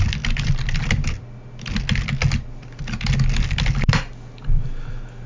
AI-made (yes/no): no